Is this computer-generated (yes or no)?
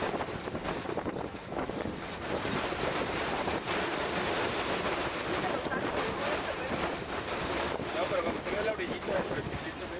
yes